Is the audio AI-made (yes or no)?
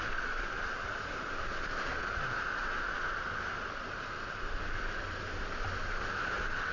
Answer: no